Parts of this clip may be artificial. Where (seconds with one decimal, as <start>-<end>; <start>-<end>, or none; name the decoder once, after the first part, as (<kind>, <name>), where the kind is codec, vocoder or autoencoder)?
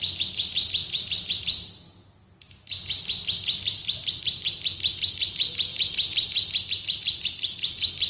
none